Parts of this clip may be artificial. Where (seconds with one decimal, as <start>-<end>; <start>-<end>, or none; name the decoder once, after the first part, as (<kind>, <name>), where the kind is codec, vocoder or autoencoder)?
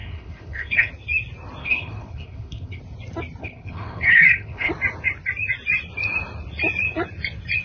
0.0-0.9 (codec, HILCodec); 1.6-2.8; 3.4-4.7